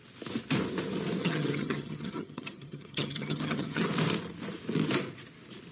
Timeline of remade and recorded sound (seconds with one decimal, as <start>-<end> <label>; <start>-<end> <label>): 0.0-1.2 recorded; 1.2-3.9 remade; 3.9-5.7 recorded